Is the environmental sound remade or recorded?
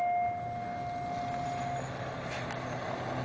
recorded